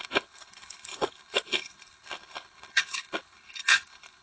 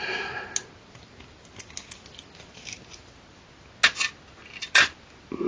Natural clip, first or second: second